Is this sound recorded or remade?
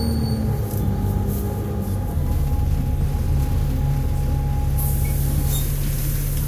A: recorded